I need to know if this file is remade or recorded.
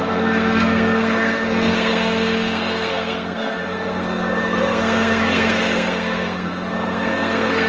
remade